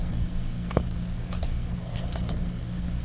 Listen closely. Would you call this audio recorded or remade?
remade